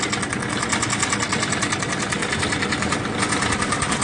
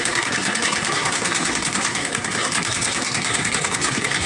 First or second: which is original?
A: first